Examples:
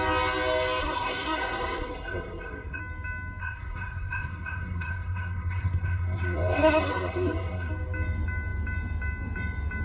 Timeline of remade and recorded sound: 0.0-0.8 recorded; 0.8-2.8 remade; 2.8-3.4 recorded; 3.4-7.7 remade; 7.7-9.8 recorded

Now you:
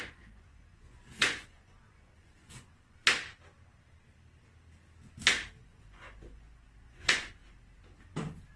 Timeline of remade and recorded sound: 0.0-3.0 remade; 3.0-5.6 recorded; 5.6-7.4 remade; 7.4-8.6 recorded

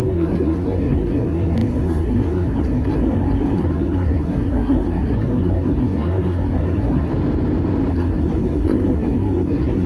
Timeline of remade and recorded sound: 0.0-7.1 remade; 7.1-7.9 recorded; 7.9-9.9 remade

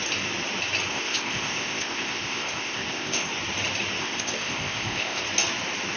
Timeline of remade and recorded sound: 0.0-0.9 recorded; 0.9-3.3 remade; 3.3-4.0 recorded; 4.0-5.2 remade; 5.2-6.0 recorded